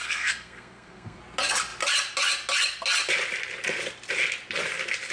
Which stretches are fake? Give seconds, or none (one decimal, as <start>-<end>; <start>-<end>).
0.0-1.2